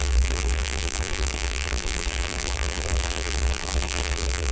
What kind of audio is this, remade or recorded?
remade